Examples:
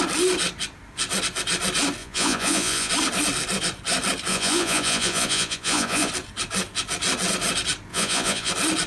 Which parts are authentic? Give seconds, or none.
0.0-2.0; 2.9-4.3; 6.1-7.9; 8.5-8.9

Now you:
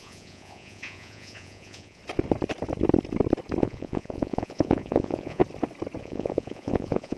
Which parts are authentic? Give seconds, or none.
2.0-3.6; 5.4-6.0

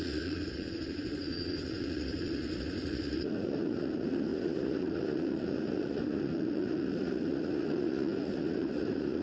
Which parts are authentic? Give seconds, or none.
none

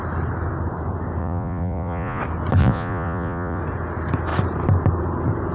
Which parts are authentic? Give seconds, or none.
0.0-1.2; 2.2-2.6; 3.6-5.5

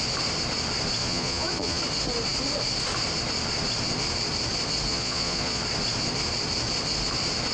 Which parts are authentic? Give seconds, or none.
0.0-1.0; 1.8-4.9; 5.6-7.5

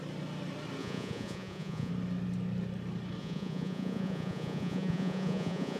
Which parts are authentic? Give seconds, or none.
0.0-0.8; 1.9-3.2